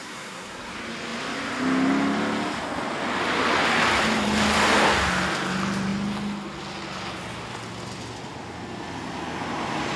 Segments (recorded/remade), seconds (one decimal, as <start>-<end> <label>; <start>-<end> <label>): 0.0-0.7 remade; 0.7-10.0 recorded